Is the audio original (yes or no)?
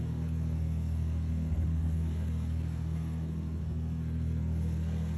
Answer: no